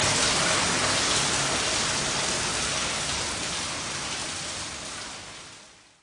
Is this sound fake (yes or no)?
no